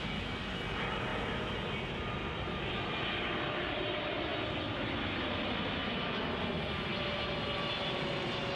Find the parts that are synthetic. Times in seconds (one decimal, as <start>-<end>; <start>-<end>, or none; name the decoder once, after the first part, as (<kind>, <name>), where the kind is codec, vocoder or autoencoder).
none